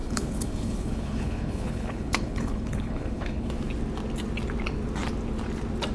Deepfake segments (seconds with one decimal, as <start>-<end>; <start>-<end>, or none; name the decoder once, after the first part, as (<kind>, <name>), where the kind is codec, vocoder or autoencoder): 0.0-3.5 (codec, HILCodec)